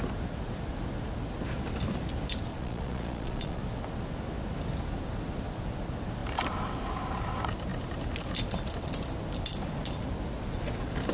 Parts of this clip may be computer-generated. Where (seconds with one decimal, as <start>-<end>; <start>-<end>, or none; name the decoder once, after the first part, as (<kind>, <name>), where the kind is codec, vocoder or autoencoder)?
2.5-3.6 (vocoder, Vocos)